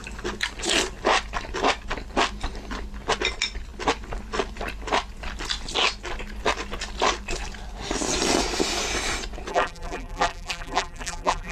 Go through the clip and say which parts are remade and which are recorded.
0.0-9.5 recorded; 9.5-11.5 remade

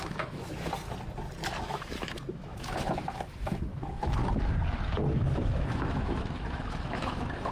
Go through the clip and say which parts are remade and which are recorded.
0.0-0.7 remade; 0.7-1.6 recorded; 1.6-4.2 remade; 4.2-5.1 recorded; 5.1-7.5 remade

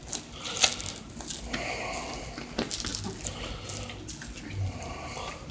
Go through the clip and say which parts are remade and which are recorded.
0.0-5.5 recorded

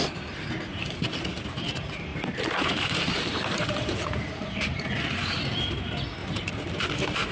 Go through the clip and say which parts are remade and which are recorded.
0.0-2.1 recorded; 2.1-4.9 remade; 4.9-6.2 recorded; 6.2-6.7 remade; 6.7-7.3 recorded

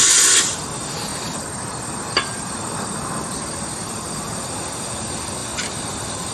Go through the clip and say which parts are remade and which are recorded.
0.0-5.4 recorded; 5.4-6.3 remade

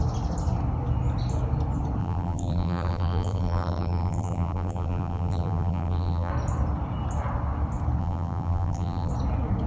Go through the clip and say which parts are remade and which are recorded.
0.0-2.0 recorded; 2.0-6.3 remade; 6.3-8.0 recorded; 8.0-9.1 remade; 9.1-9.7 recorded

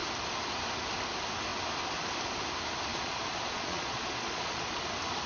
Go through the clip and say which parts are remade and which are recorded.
0.0-2.9 recorded; 2.9-4.8 remade; 4.8-5.3 recorded